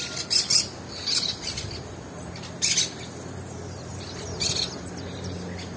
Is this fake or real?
real